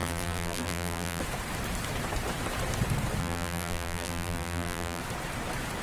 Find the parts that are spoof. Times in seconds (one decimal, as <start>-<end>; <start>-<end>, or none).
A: 0.0-1.2; 3.2-5.0